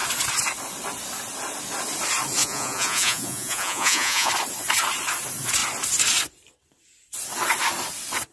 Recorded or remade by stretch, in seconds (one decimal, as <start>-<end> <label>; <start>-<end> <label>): 0.0-2.4 recorded; 2.4-4.3 remade; 4.3-8.3 recorded